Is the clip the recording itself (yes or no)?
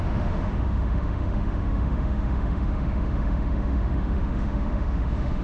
no